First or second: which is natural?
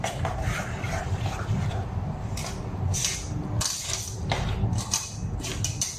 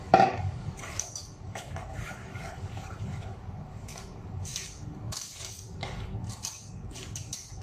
first